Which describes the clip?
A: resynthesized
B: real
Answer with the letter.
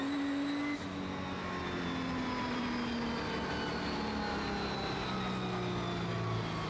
B